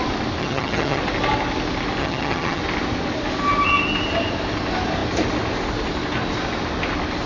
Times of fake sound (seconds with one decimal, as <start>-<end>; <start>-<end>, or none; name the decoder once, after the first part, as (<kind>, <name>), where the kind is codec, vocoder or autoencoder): 0.4-1.0 (vocoder, HiFi-GAN); 2.0-2.6